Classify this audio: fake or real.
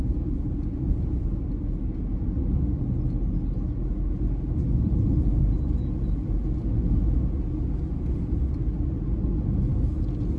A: real